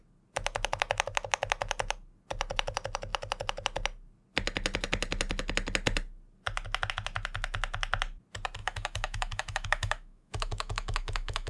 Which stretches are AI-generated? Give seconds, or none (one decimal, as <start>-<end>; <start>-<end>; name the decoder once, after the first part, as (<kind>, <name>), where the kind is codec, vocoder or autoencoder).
8.6-11.5 (autoencoder, DAC-VAE)